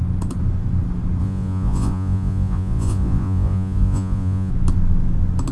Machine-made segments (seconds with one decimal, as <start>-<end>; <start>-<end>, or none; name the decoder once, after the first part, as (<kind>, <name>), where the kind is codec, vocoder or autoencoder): 1.2-4.5 (vocoder, Vocos)